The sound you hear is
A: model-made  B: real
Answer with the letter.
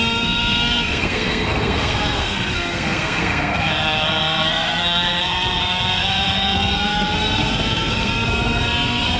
A